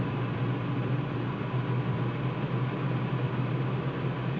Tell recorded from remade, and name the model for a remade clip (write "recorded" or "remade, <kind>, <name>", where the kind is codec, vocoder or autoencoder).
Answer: recorded